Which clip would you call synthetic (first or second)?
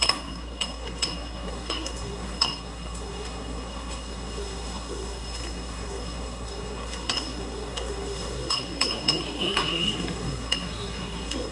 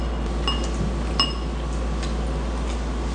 first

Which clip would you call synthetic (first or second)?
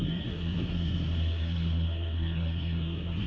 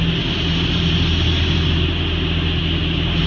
first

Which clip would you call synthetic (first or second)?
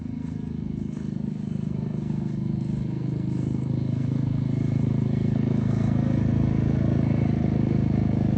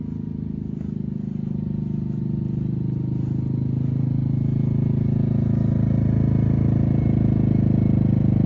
first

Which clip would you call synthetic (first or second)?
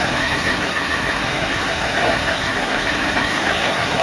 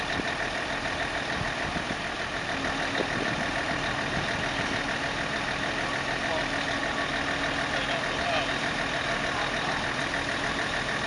first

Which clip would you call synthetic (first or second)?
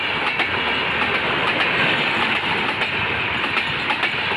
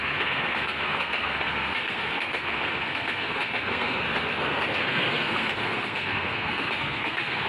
second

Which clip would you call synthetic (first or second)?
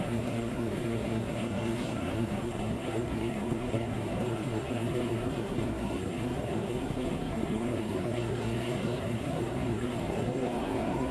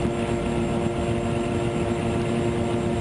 first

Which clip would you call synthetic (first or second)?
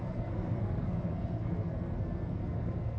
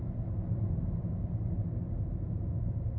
first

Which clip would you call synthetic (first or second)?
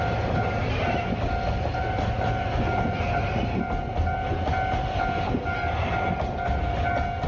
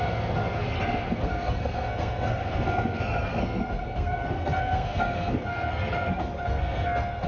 second